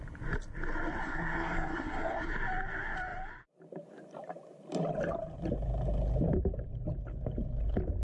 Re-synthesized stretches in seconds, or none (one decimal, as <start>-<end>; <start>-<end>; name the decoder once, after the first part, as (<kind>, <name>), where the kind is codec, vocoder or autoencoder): 1.0-2.3 (codec, SNAC)